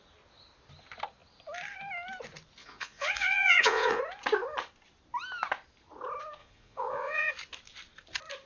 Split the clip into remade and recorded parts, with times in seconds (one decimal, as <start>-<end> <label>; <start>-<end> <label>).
0.0-2.6 recorded; 2.6-4.0 remade; 4.0-6.4 recorded; 6.4-7.3 remade; 7.3-8.5 recorded